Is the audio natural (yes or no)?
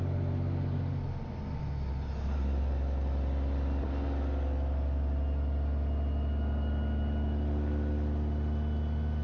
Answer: yes